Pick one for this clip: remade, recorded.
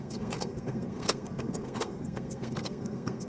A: remade